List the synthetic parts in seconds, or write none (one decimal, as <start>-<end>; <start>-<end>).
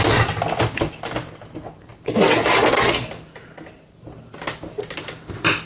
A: none